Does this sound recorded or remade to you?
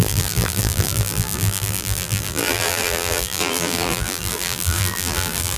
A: remade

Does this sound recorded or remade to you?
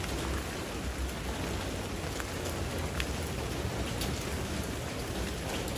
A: recorded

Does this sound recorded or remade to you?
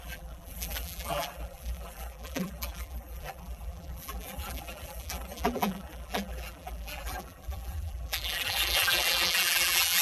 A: remade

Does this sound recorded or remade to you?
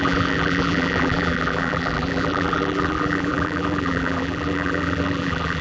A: remade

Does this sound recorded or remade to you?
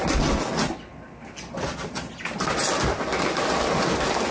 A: recorded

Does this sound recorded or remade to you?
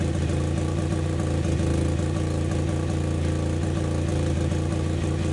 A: recorded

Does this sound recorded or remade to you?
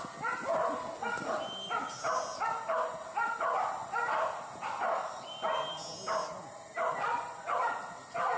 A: recorded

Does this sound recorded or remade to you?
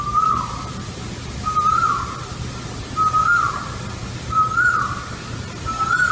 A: remade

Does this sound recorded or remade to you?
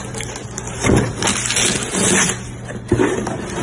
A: recorded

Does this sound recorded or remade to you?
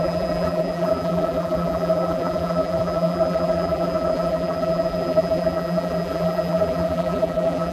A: remade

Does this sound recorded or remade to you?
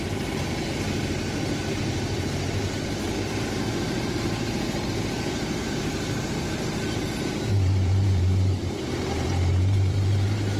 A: remade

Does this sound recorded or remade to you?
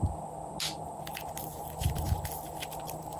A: recorded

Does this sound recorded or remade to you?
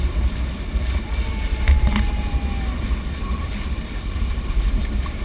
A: remade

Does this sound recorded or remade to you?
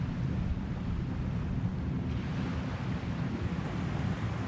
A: recorded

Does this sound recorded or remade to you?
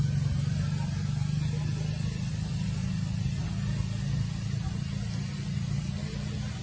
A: recorded